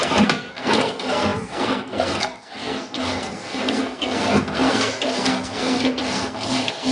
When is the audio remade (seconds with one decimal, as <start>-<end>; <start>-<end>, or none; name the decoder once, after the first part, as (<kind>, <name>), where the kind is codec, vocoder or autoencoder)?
0.0-6.9 (codec, SNAC)

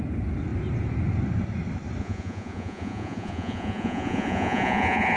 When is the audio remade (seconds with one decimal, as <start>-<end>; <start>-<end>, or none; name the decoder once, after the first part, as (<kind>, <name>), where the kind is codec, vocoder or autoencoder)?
2.0-5.2 (vocoder, Vocos)

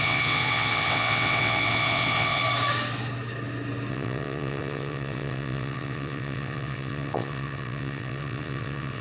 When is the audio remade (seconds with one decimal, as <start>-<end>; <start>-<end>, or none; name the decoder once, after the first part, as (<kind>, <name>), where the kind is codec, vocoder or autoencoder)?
0.0-2.4 (vocoder, WaveNeXt); 3.9-9.0

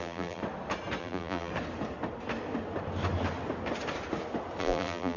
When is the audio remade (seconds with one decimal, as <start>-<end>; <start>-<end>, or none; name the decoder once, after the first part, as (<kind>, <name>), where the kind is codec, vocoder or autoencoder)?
0.0-0.4 (vocoder, BigVGAN v2); 1.0-1.5; 4.6-5.2

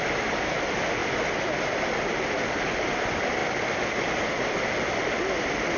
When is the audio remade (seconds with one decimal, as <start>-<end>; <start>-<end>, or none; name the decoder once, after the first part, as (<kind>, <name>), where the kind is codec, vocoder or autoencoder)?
none

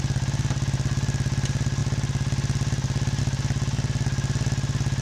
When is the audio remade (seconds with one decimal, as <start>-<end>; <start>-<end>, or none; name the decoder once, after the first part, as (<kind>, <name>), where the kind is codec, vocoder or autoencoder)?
none

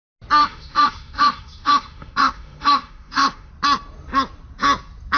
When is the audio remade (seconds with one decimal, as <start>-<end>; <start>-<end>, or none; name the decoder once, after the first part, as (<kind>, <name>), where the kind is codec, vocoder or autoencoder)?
0.4-3.5 (autoencoder, DAC-VAE)

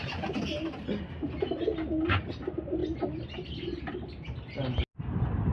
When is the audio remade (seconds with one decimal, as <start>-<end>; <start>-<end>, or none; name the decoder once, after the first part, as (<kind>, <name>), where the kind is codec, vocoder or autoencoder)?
none